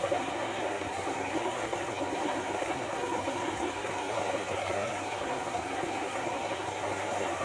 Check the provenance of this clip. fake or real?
fake